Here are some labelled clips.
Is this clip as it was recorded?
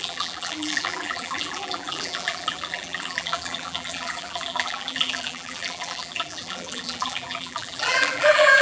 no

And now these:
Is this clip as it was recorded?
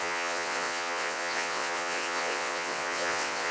no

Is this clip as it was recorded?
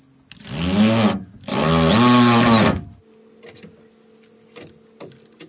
yes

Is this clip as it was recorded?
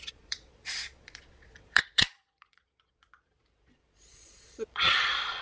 no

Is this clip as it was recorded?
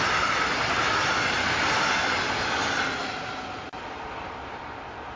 yes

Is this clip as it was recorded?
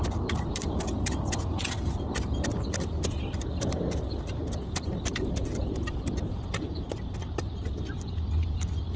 no